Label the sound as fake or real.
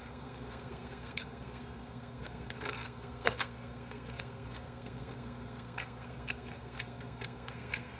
fake